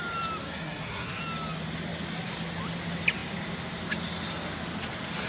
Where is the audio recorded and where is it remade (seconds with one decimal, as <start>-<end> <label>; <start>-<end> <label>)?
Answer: 0.0-0.4 recorded; 0.4-1.2 remade; 1.2-5.3 recorded